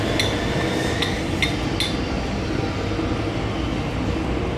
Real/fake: real